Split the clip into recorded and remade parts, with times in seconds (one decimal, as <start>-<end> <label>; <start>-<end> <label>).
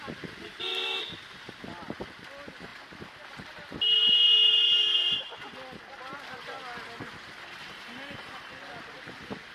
0.0-9.5 recorded